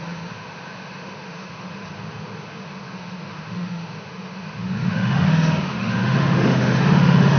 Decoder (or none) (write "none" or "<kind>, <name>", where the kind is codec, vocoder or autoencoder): autoencoder, DAC-VAE